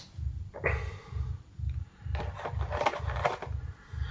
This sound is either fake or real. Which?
real